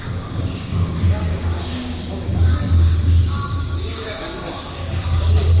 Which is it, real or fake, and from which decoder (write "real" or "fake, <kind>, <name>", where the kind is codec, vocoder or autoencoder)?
fake, codec, DAC